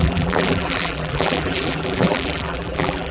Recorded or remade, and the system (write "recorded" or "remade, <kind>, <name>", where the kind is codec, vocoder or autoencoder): remade, vocoder, BigVGAN v2